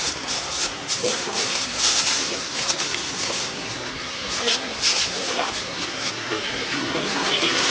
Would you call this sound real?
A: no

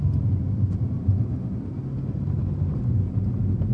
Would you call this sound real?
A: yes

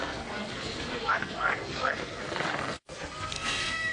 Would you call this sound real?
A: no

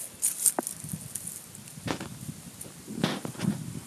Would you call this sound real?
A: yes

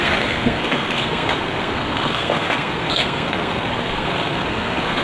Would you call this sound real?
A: no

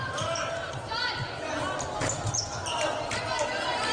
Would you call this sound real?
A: yes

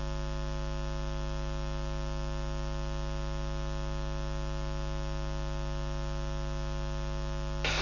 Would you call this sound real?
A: yes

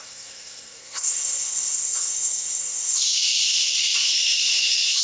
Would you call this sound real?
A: no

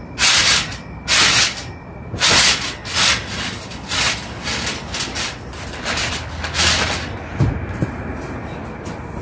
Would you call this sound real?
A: yes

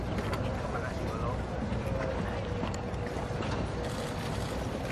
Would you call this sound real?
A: yes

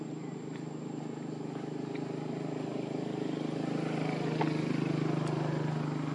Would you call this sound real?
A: yes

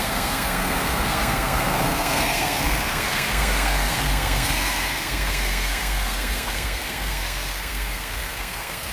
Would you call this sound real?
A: no